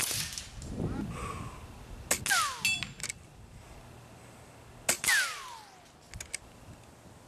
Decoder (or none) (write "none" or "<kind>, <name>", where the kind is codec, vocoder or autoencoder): none